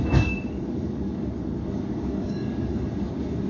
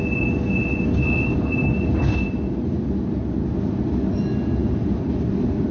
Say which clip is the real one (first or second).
second